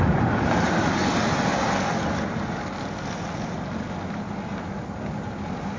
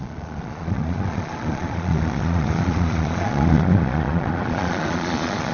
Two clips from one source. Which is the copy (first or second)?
second